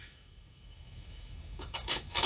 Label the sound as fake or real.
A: fake